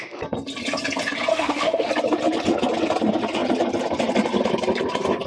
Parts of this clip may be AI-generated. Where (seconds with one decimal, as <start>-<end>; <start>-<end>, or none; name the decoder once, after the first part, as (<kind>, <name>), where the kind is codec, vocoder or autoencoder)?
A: 1.3-1.9 (autoencoder, DAC-VAE)

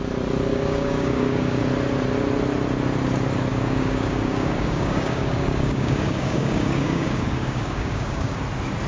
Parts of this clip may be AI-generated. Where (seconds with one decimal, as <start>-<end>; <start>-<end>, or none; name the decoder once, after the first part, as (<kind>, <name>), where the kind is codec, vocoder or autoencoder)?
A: 0.5-1.6 (codec, DAC); 3.5-8.4

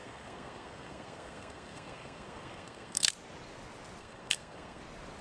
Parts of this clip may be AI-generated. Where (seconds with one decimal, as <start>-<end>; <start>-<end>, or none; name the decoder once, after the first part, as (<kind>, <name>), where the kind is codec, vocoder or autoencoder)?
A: 0.0-3.1 (codec, SNAC); 4.0-4.8

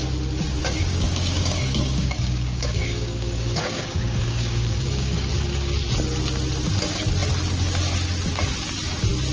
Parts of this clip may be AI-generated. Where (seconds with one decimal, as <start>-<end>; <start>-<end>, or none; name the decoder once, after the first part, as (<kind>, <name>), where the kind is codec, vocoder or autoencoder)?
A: 0.6-5.3 (codec, DAC)

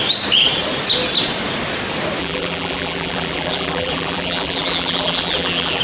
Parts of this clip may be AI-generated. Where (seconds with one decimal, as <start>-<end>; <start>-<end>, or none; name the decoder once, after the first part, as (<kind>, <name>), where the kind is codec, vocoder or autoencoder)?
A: 2.2-5.8 (vocoder, BigVGAN v2)

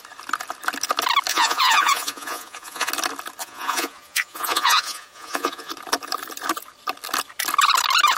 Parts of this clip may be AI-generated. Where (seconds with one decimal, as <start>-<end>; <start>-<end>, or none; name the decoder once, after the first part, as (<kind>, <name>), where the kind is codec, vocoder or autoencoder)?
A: 1.3-2.9 (vocoder, Vocos); 3.4-5.7

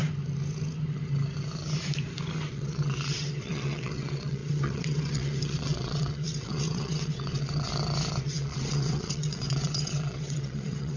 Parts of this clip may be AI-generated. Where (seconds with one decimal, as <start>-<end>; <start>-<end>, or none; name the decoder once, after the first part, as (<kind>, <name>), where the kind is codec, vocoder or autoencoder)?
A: 2.5-7.7 (vocoder, WaveNeXt); 8.2-11.0